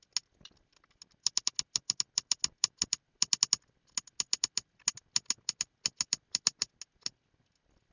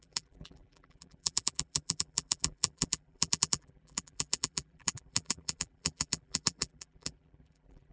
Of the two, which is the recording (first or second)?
first